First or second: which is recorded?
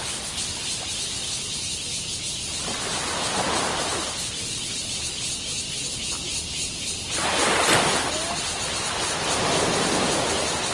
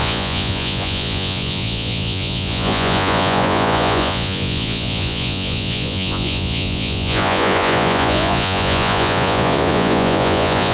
first